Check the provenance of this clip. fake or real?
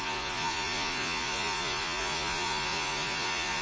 fake